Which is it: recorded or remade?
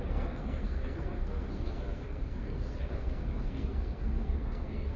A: remade